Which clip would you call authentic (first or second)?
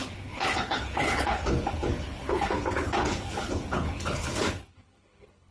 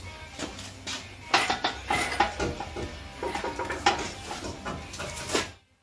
second